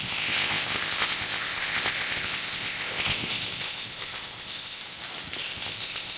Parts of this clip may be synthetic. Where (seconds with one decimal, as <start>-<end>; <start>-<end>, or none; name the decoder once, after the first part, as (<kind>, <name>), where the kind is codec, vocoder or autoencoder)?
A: 0.0-4.8 (codec, ZipCodec); 5.4-6.2